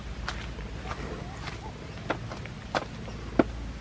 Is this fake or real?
real